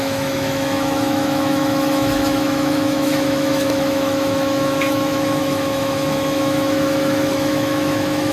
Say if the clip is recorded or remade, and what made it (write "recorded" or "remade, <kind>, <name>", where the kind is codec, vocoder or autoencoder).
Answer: remade, autoencoder, DAC-VAE